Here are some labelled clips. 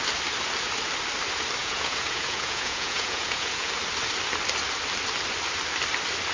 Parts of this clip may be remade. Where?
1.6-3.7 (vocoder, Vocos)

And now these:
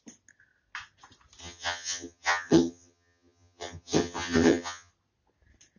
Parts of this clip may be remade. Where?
1.4-4.9 (vocoder, HiFi-GAN)

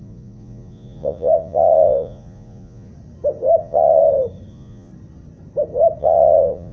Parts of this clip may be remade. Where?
0.0-2.9 (vocoder, Vocos); 3.6-4.0; 4.5-4.9; 6.0-6.7

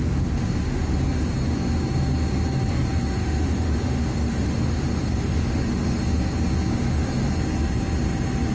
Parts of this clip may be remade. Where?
0.0-1.0 (autoencoder, DAC-VAE); 3.2-6.0; 6.7-7.3

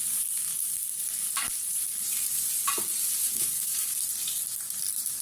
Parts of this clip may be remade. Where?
3.2-3.9 (codec, DAC)

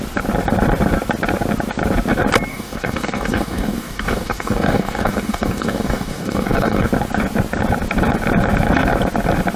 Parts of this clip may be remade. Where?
2.5-6.9 (codec, DAC)